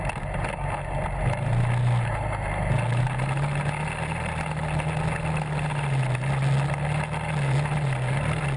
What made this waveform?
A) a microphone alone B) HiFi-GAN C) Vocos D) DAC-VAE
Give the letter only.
A